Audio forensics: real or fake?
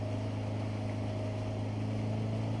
real